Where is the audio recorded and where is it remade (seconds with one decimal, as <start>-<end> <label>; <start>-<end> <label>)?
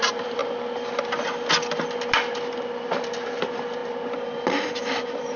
0.0-0.4 remade; 0.4-2.8 recorded; 2.8-5.4 remade